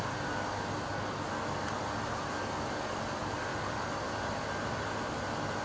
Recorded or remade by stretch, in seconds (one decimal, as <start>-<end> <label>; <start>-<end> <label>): 0.0-5.6 recorded